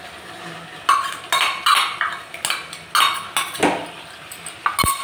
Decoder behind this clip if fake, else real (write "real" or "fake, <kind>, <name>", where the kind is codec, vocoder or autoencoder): real